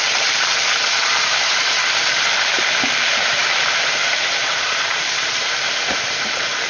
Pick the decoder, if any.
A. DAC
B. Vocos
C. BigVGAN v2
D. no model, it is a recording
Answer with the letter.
C